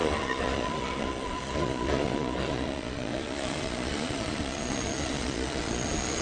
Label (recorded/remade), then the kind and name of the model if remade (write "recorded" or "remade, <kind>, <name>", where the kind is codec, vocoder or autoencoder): remade, vocoder, Vocos